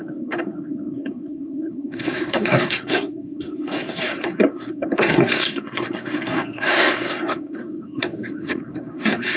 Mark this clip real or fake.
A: fake